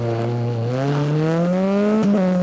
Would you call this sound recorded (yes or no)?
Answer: yes